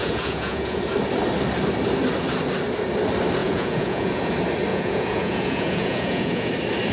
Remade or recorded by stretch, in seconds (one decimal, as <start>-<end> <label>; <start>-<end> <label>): 0.0-0.8 remade; 0.8-3.4 recorded; 3.4-4.3 remade; 4.3-4.7 recorded; 4.7-6.5 remade; 6.5-6.9 recorded